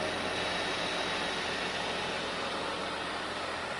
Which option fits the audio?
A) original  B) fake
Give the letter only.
A